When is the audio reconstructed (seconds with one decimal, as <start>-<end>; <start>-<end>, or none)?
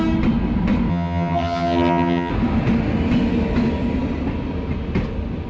0.9-2.3